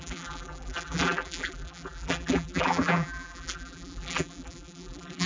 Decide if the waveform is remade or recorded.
remade